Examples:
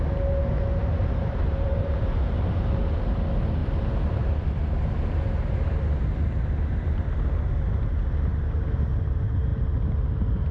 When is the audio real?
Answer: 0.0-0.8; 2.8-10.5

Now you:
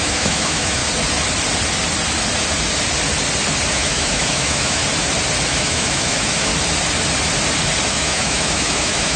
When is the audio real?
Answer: 0.8-3.7; 4.8-5.5; 6.5-7.9

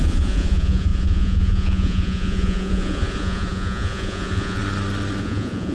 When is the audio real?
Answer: 4.6-5.2

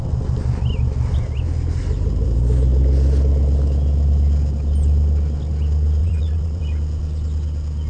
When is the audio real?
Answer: 0.0-6.0; 6.6-7.9

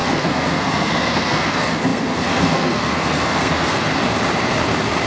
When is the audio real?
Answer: 3.9-5.1